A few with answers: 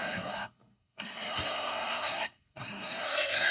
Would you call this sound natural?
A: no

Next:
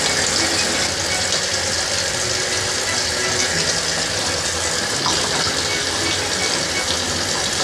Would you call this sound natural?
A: yes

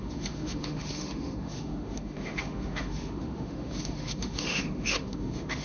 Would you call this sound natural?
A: no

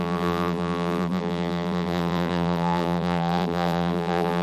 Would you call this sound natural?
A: no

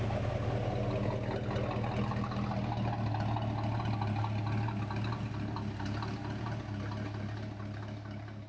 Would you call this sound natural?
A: yes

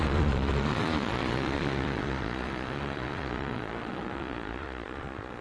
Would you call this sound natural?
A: no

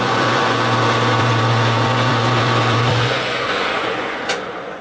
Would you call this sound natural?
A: no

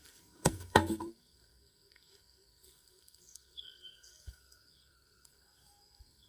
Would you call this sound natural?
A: no